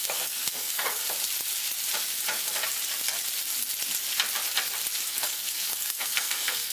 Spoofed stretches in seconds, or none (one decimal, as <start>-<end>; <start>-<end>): 0.0-1.0; 5.0-6.7